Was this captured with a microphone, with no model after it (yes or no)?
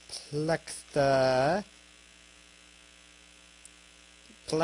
yes